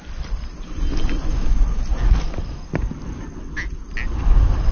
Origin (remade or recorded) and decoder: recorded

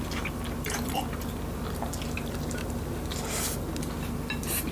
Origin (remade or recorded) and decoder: recorded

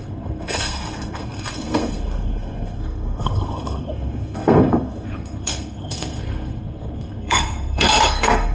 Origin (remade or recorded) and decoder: remade, codec, SNAC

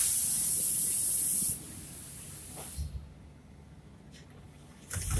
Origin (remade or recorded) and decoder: recorded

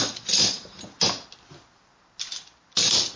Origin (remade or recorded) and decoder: recorded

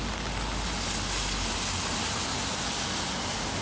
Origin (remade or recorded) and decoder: recorded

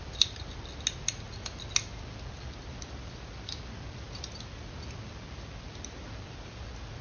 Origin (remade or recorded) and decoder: recorded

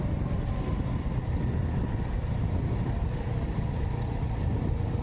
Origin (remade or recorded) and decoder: recorded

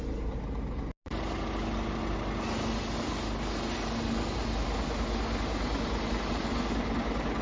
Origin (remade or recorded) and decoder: recorded